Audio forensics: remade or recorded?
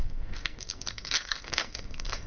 remade